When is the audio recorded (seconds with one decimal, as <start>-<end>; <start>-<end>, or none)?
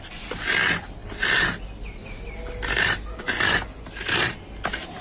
0.0-5.0